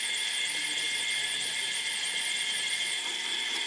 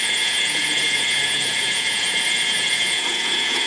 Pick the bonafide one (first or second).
first